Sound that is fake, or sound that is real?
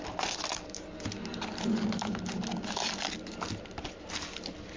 real